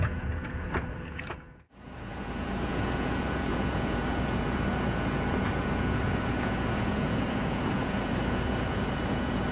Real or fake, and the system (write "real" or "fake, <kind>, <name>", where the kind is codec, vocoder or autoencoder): fake, vocoder, Vocos